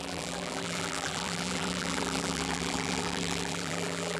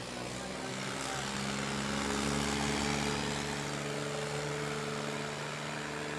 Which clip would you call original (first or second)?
second